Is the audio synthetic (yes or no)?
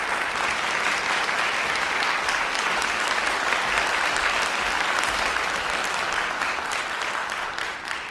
no